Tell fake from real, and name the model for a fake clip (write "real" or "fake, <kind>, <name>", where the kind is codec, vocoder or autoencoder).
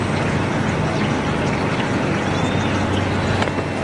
real